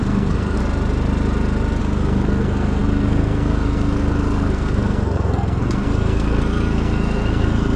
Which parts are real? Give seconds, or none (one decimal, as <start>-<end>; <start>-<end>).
0.6-1.8